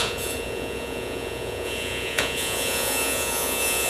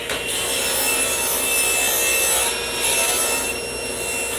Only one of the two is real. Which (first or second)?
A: second